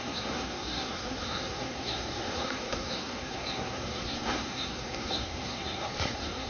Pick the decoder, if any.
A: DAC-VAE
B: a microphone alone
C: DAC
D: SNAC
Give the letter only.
D